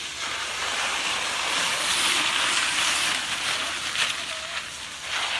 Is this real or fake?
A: real